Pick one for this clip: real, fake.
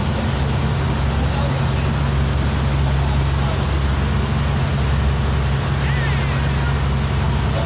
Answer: real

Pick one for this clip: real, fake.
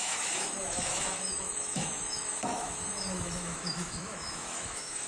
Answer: fake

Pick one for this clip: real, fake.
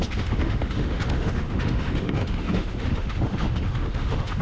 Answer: fake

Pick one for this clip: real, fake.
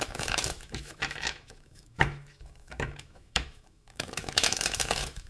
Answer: fake